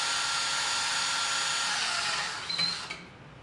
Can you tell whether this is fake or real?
real